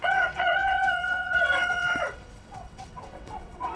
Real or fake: fake